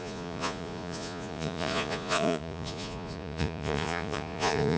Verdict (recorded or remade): remade